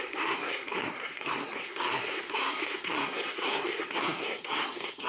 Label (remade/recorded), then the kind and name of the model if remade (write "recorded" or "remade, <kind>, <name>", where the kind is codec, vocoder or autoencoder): remade, codec, SNAC